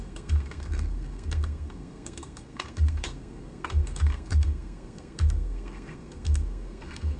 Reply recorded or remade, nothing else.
remade